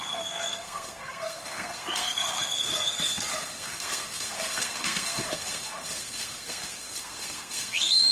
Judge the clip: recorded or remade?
remade